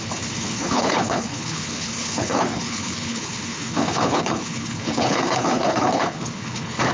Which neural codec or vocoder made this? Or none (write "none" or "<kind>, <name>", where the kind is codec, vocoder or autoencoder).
codec, HILCodec